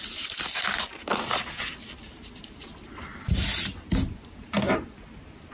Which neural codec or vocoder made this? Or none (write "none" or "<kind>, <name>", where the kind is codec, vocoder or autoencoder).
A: none